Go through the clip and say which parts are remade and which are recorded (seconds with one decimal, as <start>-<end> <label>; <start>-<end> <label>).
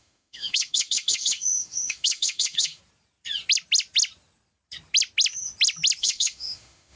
0.0-2.8 remade; 2.8-6.0 recorded; 6.0-7.0 remade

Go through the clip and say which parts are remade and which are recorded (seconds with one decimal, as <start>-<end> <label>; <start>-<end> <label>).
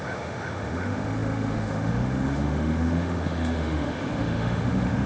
0.0-5.1 remade